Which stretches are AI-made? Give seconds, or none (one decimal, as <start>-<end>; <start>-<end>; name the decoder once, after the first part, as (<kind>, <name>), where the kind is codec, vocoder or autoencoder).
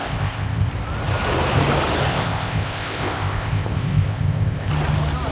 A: 0.0-0.7 (codec, ZipCodec); 2.1-4.7